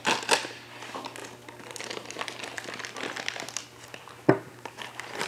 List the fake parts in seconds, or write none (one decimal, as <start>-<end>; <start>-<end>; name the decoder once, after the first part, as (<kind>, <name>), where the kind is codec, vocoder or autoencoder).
none